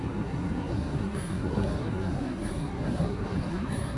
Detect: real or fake fake